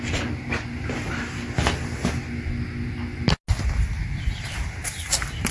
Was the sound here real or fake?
real